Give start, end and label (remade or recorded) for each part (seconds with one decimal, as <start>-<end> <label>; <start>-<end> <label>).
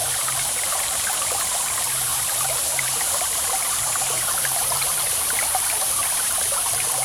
0.0-7.0 remade